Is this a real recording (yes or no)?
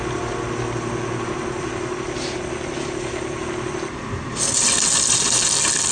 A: yes